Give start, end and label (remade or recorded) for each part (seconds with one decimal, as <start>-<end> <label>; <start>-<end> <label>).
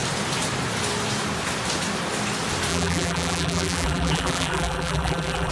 0.0-2.7 recorded; 2.7-5.5 remade